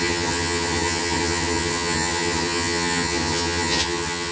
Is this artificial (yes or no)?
yes